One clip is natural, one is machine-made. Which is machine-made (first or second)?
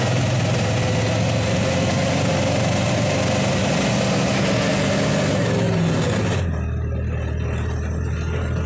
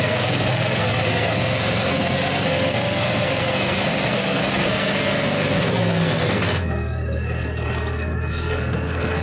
second